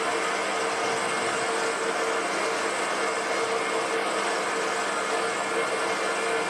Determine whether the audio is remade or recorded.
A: recorded